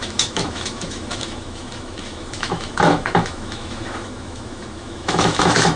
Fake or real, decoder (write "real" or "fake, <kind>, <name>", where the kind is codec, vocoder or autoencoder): fake, autoencoder, DAC-VAE